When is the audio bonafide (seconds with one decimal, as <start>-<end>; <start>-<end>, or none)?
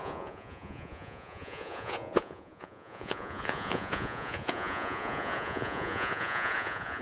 none